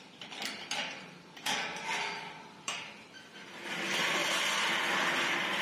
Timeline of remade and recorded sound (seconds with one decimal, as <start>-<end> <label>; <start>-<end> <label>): 0.0-4.2 remade; 4.2-4.9 recorded; 4.9-5.6 remade